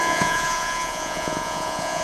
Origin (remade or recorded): remade